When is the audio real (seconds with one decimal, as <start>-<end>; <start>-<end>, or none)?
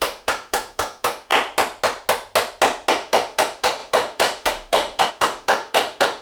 1.3-2.9